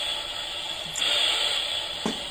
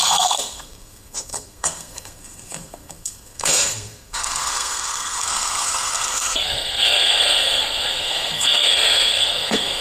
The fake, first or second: second